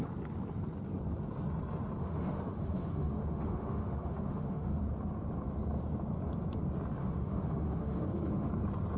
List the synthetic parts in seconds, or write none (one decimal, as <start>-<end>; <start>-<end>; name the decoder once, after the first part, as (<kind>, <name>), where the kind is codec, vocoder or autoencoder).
2.0-4.8 (autoencoder, DAC-VAE); 7.0-8.5